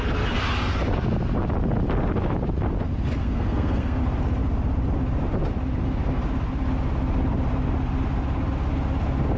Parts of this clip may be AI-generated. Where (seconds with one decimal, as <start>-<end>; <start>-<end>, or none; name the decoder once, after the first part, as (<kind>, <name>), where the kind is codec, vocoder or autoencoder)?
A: 3.2-4.0 (codec, SNAC)